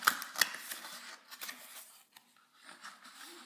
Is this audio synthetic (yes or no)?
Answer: no